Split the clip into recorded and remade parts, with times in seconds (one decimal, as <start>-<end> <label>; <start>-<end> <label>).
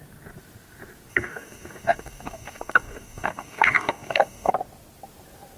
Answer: 0.0-1.1 recorded; 1.1-4.5 remade; 4.5-5.6 recorded